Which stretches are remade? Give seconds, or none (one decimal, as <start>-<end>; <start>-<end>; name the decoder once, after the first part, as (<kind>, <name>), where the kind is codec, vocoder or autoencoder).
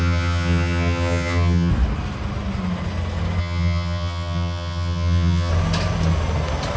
0.0-1.7 (vocoder, HiFi-GAN); 3.4-5.5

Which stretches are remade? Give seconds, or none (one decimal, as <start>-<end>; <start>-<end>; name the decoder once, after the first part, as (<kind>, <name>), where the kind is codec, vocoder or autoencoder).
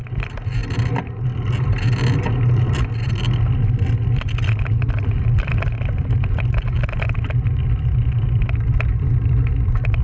none